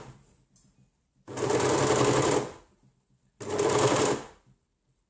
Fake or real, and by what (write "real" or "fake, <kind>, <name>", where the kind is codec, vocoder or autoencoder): real